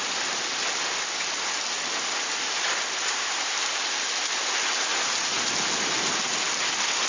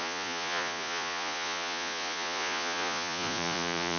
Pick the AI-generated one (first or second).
second